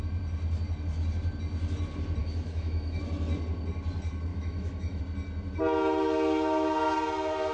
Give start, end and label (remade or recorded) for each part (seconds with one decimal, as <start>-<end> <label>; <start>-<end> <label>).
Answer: 0.0-2.2 recorded; 2.2-3.0 remade; 3.0-4.3 recorded; 4.3-5.0 remade; 5.0-7.5 recorded